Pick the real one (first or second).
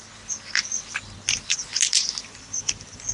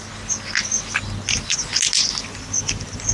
second